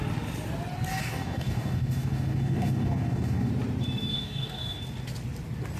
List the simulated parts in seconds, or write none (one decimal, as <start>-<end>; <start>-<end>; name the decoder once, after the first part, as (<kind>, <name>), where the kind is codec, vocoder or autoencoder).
1.0-3.5 (codec, DAC); 4.1-4.8